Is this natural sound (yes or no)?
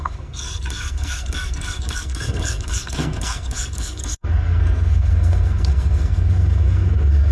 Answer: no